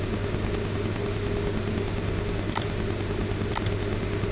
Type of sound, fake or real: real